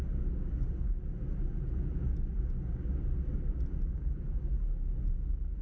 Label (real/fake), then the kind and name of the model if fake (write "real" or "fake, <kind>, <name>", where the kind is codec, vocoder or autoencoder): real